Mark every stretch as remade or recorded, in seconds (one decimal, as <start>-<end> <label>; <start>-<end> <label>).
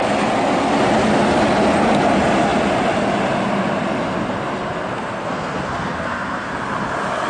0.0-4.9 recorded; 4.9-6.5 remade; 6.5-7.3 recorded